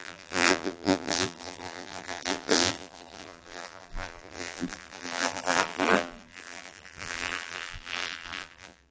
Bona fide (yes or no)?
no